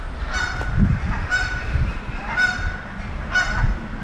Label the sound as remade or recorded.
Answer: remade